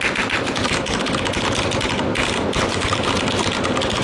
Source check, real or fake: real